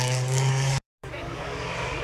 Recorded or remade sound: remade